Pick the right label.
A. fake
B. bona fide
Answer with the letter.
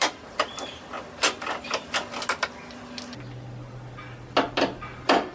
B